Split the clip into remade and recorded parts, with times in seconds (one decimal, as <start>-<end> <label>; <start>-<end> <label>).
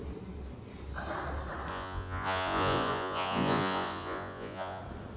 0.0-1.7 recorded; 1.7-4.8 remade; 4.8-5.2 recorded